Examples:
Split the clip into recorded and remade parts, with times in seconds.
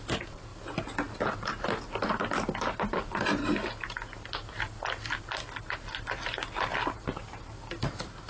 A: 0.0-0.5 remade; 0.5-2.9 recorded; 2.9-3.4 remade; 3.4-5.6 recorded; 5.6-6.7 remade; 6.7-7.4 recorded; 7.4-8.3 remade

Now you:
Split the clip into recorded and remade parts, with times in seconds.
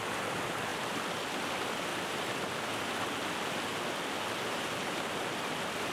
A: 0.0-1.9 recorded; 1.9-2.4 remade; 2.4-5.9 recorded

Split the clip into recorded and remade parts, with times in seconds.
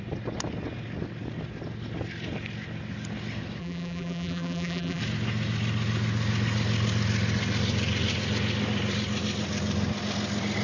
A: 0.0-3.6 recorded; 3.6-5.0 remade; 5.0-10.6 recorded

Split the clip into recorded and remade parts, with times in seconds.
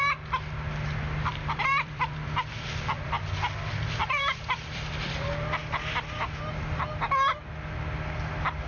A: 0.0-1.3 recorded; 1.3-5.3 remade; 5.3-8.7 recorded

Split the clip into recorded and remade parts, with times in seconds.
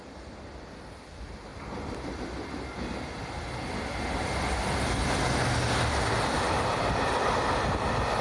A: 0.0-8.2 recorded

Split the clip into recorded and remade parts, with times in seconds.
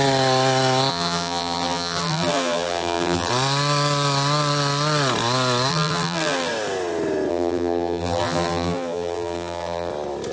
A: 0.0-0.9 recorded; 0.9-3.3 remade; 3.3-5.7 recorded; 5.7-6.5 remade; 6.5-7.3 recorded; 7.3-9.9 remade; 9.9-10.3 recorded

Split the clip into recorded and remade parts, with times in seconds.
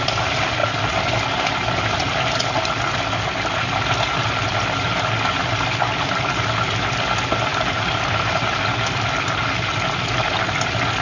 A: 0.0-7.5 recorded; 7.5-9.0 remade; 9.0-11.0 recorded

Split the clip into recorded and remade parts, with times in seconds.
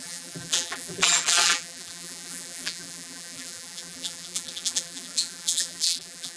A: 0.0-6.4 remade